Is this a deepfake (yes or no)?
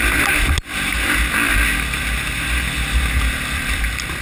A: no